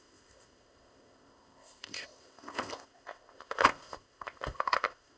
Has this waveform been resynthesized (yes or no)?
yes